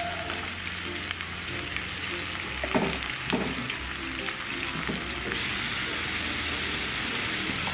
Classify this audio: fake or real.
real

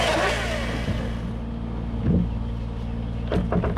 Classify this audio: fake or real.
real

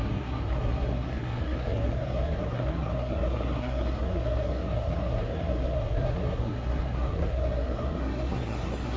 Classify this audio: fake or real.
fake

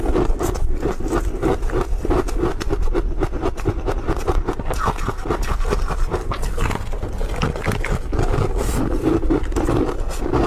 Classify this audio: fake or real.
real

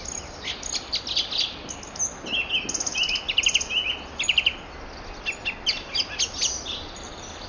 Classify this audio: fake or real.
real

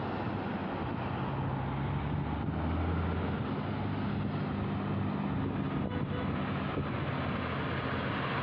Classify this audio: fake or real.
real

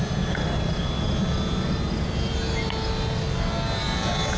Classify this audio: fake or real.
real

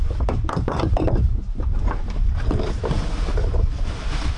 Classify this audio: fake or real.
real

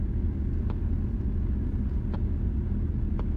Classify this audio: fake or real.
real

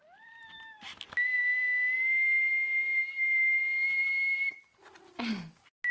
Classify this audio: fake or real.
real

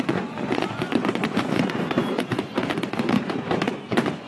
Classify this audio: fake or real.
fake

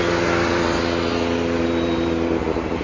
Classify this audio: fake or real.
real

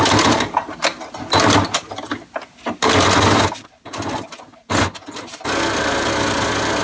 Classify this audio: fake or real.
real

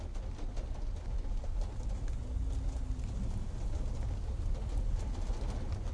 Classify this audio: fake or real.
real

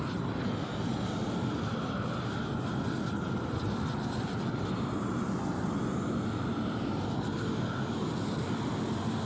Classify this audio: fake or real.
real